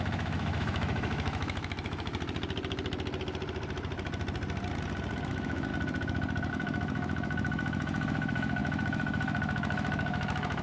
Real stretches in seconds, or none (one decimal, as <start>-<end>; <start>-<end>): 2.1-5.3; 5.7-6.5